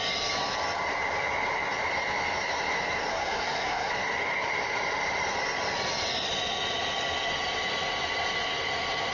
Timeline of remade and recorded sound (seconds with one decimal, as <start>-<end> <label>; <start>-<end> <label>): 0.0-3.1 recorded; 3.1-3.9 remade; 3.9-9.1 recorded